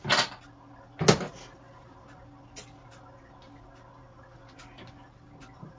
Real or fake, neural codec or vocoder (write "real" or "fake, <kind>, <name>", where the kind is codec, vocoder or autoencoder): real